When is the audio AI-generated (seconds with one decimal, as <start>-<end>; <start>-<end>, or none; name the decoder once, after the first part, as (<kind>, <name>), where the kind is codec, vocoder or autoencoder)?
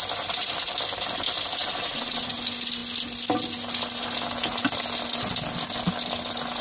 1.6-2.3 (vocoder, WaveNeXt)